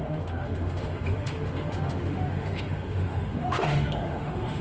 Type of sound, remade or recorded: remade